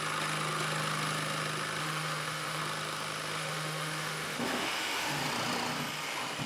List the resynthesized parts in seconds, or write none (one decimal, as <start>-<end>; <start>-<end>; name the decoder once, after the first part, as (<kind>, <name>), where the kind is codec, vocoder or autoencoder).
1.8-2.6 (autoencoder, DAC-VAE); 3.4-5.2